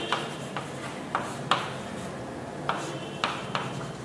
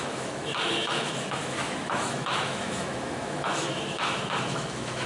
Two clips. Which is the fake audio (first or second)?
second